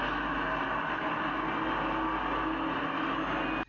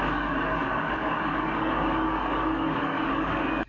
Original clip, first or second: first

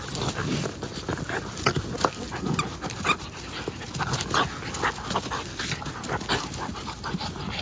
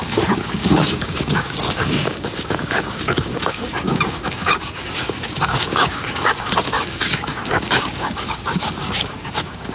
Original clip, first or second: first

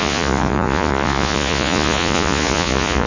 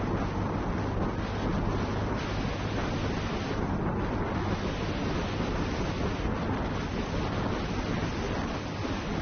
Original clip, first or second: second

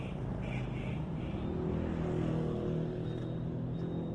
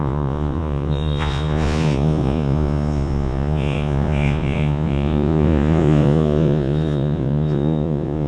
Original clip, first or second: first